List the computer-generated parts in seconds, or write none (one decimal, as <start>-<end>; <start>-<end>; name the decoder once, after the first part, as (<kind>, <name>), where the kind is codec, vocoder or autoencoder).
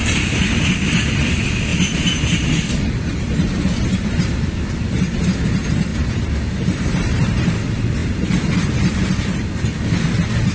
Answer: 3.9-4.7 (vocoder, BigVGAN v2); 5.9-7.5; 8.0-9.5